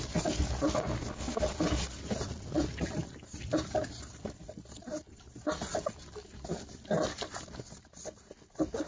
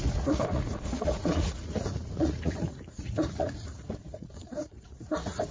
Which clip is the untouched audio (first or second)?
first